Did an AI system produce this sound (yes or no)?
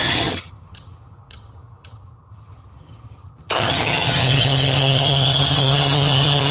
yes